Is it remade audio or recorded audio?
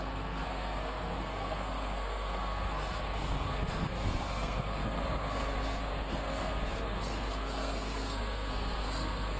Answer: remade